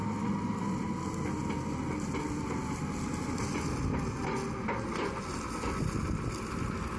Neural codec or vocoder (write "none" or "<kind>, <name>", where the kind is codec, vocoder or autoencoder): none